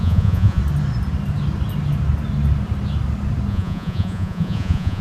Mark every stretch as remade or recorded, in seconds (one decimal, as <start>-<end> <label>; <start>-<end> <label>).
0.0-0.6 remade; 0.6-3.5 recorded; 3.5-5.0 remade